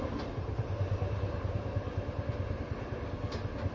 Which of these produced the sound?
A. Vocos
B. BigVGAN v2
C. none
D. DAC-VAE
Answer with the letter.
C